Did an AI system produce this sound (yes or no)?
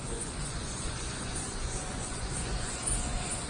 yes